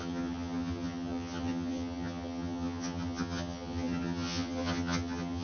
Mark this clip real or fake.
fake